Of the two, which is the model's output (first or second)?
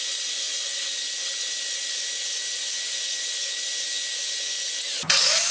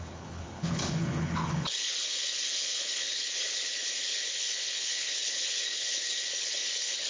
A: second